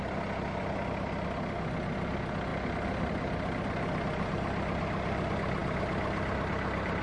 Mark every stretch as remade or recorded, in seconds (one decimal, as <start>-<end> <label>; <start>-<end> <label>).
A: 0.0-7.0 recorded